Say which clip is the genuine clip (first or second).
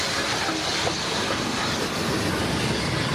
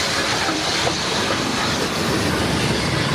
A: first